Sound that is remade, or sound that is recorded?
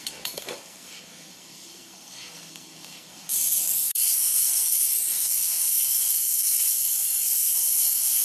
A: remade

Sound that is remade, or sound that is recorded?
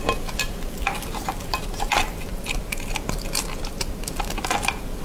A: recorded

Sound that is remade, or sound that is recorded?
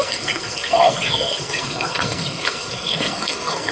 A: remade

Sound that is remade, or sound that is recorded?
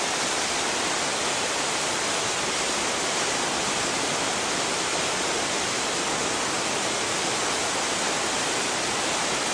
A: recorded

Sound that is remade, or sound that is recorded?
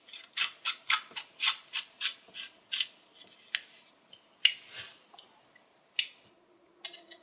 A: recorded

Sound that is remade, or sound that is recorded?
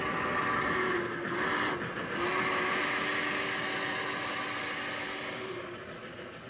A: recorded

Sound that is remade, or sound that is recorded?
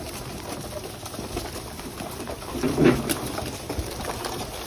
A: recorded